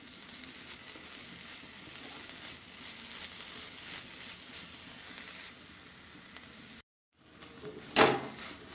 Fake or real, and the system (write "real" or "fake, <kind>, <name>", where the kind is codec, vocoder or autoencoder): real